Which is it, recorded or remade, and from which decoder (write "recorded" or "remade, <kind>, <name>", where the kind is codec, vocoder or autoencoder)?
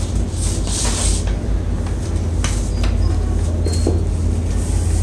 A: recorded